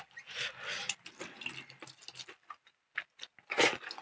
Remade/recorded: recorded